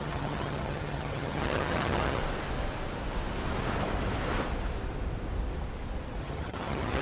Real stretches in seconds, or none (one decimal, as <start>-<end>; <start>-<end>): 2.2-6.2